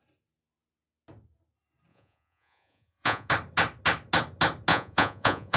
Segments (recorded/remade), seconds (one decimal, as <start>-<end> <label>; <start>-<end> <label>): 0.0-1.9 recorded; 1.9-3.3 remade; 3.3-4.7 recorded; 4.7-5.6 remade